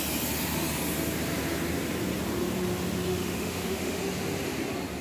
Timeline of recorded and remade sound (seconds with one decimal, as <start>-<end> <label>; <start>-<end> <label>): 0.0-3.1 recorded; 3.1-4.0 remade; 4.0-5.0 recorded